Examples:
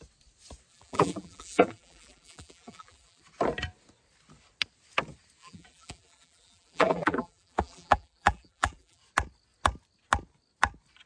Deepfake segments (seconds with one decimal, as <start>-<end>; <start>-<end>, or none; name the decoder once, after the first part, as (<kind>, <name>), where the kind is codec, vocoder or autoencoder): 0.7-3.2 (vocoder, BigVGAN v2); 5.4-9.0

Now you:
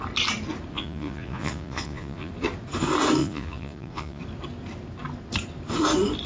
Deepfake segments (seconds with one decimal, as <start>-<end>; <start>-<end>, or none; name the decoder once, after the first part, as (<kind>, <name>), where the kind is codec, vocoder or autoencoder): 0.7-2.3 (vocoder, Vocos); 3.2-4.2

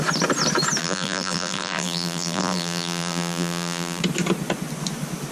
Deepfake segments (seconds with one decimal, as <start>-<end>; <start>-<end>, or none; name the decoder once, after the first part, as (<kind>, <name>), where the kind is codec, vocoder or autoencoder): 0.8-4.0 (vocoder, BigVGAN v2)

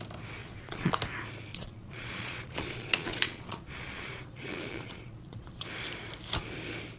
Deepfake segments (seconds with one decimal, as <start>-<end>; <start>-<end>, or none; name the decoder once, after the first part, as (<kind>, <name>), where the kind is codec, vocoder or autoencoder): 0.4-0.9 (vocoder, Vocos); 1.5-5.7

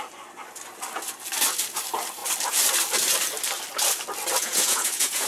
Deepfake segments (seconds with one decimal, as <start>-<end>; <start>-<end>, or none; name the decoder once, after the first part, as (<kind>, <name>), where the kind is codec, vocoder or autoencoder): 4.4-5.3 (vocoder, Vocos)

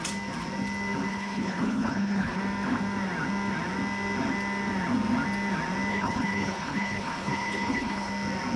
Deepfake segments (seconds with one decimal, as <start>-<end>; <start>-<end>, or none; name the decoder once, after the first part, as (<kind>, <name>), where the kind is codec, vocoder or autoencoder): 1.1-2.4 (codec, HILCodec); 5.9-8.1

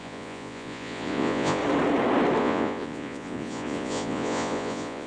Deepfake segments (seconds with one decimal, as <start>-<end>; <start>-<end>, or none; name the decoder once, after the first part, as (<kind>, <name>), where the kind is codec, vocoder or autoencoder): 0.0-1.6 (vocoder, Vocos); 2.4-5.1